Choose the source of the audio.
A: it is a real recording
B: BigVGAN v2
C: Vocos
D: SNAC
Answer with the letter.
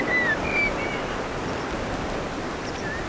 A